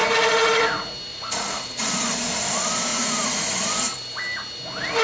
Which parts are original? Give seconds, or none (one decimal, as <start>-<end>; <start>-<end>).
0.0-1.1; 2.1-2.9; 3.5-5.0